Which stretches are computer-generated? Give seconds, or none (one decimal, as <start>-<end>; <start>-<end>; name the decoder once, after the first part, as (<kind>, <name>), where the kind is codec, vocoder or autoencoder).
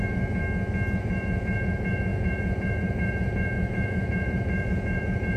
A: 0.0-0.4 (vocoder, Vocos); 1.0-5.4